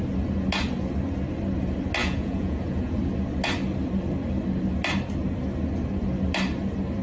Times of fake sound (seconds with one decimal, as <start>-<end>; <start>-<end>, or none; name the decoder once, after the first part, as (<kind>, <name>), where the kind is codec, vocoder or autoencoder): 2.0-3.0 (vocoder, Vocos)